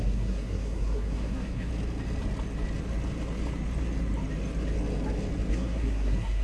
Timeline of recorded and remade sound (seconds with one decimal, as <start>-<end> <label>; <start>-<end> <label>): 0.0-1.7 remade; 1.7-5.5 recorded; 5.5-6.4 remade